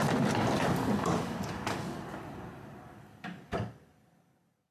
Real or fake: real